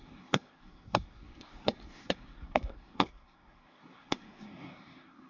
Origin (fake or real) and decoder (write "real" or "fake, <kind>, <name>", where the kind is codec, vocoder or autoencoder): fake, codec, SNAC